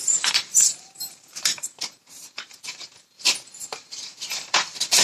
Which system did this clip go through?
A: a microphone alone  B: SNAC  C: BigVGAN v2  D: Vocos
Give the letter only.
C